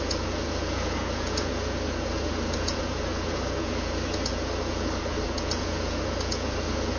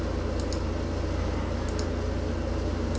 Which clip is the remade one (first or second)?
first